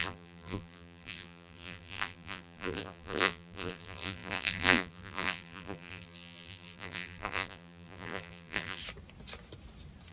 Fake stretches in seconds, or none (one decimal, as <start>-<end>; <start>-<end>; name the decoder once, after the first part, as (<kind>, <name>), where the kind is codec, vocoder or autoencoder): 0.0-8.8 (vocoder, BigVGAN v2)